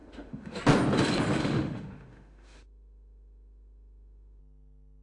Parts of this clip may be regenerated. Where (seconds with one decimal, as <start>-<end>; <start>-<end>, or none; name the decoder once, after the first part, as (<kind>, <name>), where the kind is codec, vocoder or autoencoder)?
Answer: 0.0-0.6 (autoencoder, DAC-VAE); 1.4-4.4